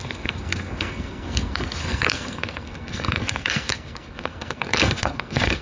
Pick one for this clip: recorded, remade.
remade